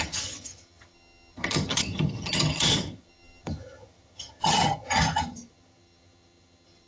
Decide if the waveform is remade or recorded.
remade